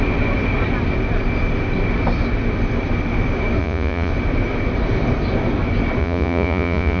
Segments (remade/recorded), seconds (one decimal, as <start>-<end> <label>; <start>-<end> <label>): 0.0-3.6 recorded; 3.6-4.1 remade; 4.1-6.0 recorded; 6.0-7.0 remade

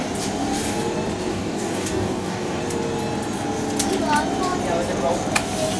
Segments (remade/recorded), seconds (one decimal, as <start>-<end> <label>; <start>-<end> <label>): 0.0-1.3 recorded; 1.3-2.6 remade; 2.6-5.8 recorded

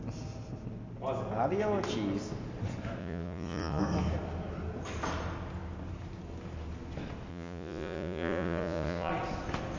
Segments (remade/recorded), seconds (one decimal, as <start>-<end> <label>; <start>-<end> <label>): 0.0-3.0 recorded; 3.0-3.8 remade; 3.8-7.3 recorded; 7.3-9.1 remade; 9.1-9.8 recorded

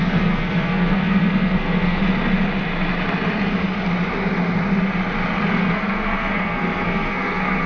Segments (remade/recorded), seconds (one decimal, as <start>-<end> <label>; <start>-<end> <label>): 0.0-2.0 remade; 2.0-5.5 recorded; 5.5-7.7 remade

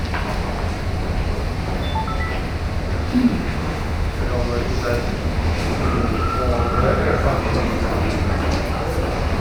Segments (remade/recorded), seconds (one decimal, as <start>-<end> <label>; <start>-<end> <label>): 0.0-3.0 recorded; 3.0-4.2 remade; 4.2-5.2 recorded; 5.2-6.0 remade; 6.0-9.4 recorded

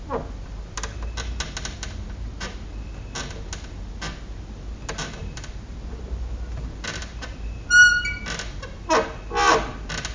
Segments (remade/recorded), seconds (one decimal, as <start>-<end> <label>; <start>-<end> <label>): 0.0-10.1 recorded